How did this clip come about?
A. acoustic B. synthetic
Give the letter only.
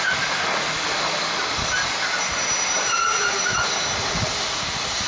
A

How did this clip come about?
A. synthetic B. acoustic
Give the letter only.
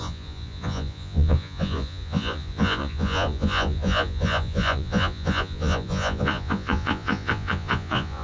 A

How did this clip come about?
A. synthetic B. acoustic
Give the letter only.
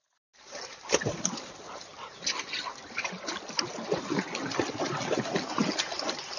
B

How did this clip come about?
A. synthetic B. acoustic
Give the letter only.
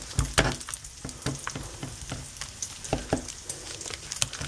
B